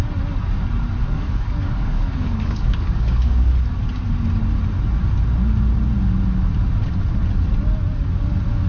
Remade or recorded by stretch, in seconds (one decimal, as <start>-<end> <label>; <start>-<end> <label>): 0.0-1.0 recorded; 1.0-3.5 remade; 3.5-8.7 recorded